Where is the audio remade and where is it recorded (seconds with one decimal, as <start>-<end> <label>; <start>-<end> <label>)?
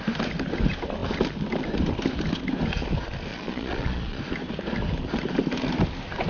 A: 0.0-3.3 recorded; 3.3-4.2 remade; 4.2-6.3 recorded